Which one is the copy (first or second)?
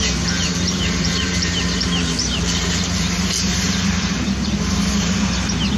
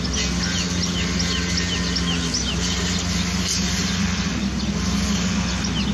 first